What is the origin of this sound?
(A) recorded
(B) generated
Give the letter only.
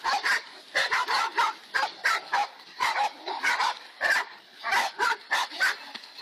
A